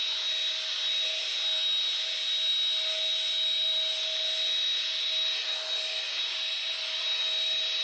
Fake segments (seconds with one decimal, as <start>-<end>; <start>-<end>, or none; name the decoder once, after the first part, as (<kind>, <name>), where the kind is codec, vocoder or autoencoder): none